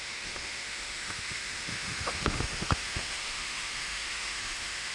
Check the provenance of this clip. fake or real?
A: fake